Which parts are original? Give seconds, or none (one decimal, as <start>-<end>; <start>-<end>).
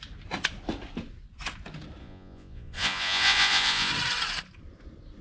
0.0-2.0; 3.9-5.2